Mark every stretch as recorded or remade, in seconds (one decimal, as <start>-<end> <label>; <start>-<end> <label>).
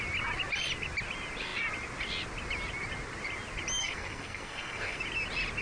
0.0-3.8 recorded; 3.8-5.0 remade; 5.0-5.6 recorded